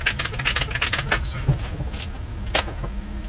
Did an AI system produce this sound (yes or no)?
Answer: no